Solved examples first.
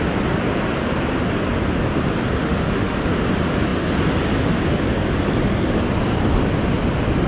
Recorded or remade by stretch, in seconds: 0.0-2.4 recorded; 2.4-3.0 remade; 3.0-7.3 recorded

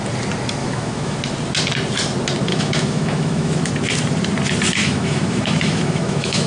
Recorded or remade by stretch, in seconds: 0.0-0.6 recorded; 0.6-1.2 remade; 1.2-2.5 recorded; 2.5-3.7 remade; 3.7-4.8 recorded; 4.8-6.5 remade